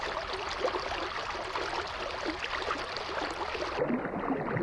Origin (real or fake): real